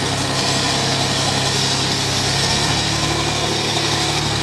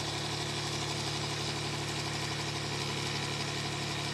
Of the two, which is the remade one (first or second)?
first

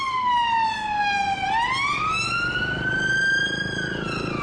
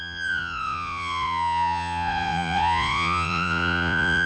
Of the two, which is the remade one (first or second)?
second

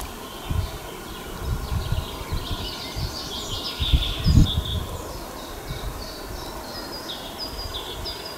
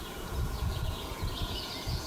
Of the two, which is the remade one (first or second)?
second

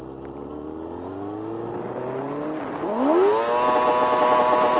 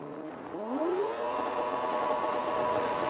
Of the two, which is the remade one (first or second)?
second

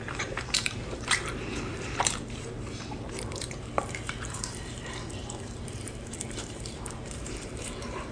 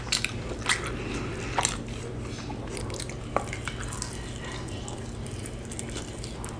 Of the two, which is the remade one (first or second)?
first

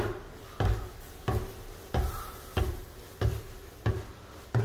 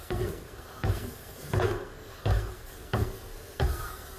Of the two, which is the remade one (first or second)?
second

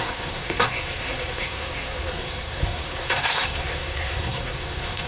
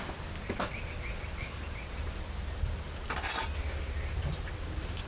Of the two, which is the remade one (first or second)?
first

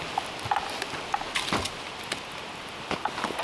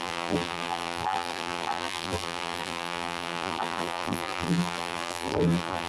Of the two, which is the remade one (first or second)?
second